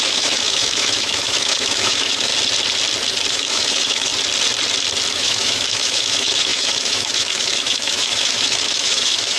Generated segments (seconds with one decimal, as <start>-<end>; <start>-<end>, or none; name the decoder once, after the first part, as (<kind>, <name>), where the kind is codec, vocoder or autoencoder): 0.0-2.3 (autoencoder, DAC-VAE); 3.3-4.1; 5.1-9.4